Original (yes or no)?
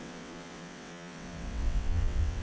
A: no